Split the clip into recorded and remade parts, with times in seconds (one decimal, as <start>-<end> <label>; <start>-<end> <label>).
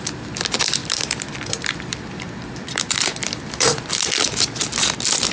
0.0-0.8 recorded; 0.8-4.0 remade; 4.0-5.3 recorded